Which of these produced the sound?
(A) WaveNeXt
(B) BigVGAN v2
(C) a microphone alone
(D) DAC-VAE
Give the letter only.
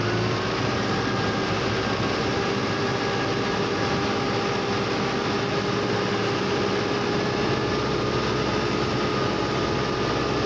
C